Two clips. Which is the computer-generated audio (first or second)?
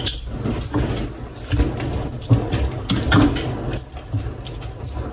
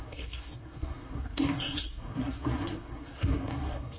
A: second